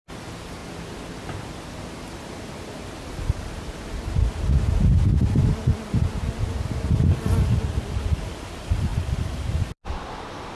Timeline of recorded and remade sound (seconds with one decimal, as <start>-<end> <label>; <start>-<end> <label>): 0.0-8.9 recorded; 8.9-9.8 remade; 9.8-10.6 recorded